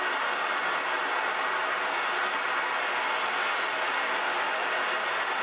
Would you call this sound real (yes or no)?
yes